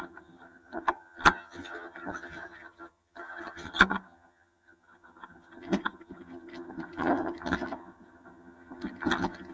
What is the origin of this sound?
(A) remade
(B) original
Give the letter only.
A